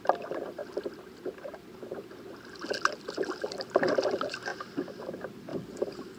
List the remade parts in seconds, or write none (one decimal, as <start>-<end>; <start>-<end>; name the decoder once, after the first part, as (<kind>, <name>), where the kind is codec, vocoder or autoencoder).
0.0-0.6 (vocoder, BigVGAN v2); 3.3-4.5; 5.0-5.5